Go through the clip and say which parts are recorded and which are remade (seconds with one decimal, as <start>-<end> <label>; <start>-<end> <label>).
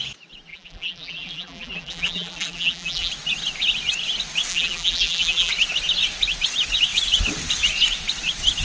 0.0-0.5 recorded; 0.5-3.1 remade; 3.1-4.5 recorded; 4.5-5.5 remade; 5.5-8.6 recorded